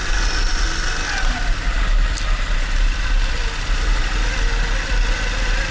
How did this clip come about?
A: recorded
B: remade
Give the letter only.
A